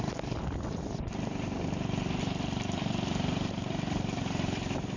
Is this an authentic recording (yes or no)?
no